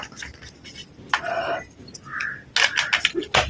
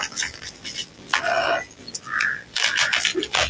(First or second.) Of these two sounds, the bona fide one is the first